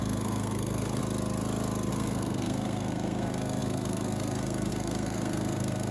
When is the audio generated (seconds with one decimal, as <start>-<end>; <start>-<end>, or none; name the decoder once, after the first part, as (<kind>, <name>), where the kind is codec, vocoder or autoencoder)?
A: 0.0-1.0 (codec, SNAC); 1.9-5.9